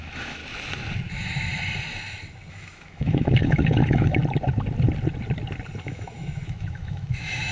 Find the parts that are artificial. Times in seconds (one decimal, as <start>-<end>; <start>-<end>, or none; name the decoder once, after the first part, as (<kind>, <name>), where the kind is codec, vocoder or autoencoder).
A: 0.0-0.4 (autoencoder, DAC-VAE); 2.5-4.2; 5.8-7.5